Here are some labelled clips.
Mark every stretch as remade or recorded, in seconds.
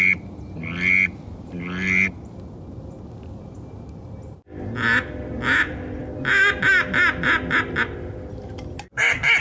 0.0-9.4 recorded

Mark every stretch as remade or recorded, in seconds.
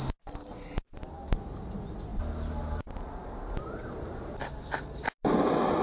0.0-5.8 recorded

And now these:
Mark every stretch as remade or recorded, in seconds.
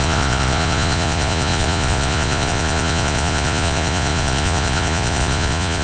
0.0-5.8 remade